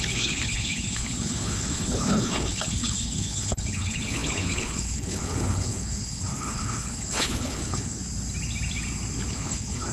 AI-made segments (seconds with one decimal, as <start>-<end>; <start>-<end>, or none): 0.0-8.0; 9.3-9.9